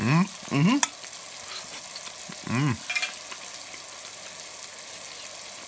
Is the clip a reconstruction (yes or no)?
no